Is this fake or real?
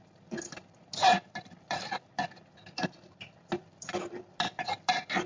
fake